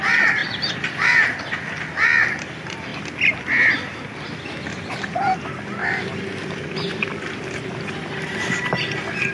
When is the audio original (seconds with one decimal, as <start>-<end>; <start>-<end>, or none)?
0.0-0.4; 1.3-5.8; 7.9-9.3